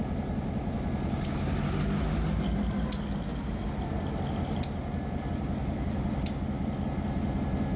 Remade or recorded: recorded